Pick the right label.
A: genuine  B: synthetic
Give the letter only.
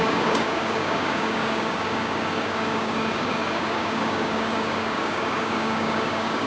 B